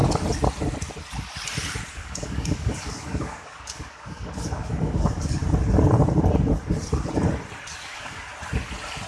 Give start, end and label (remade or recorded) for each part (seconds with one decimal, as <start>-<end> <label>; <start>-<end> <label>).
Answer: 0.0-1.9 recorded; 1.9-5.4 remade; 5.4-7.7 recorded; 7.7-8.3 remade; 8.3-9.1 recorded